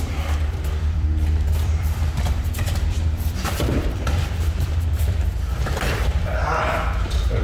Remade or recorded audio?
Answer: remade